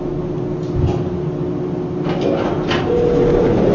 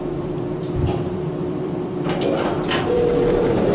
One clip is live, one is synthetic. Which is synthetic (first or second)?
second